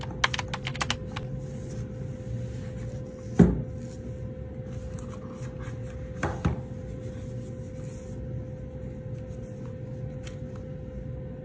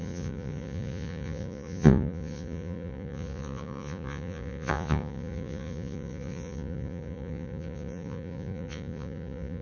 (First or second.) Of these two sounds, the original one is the first